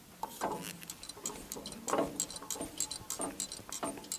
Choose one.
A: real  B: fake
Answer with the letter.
A